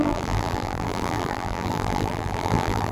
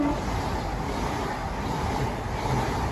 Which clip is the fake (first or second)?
first